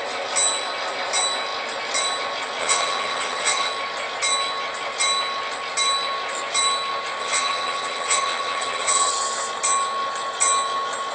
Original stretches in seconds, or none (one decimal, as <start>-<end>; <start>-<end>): 0.0-2.6; 3.7-7.2; 9.1-11.1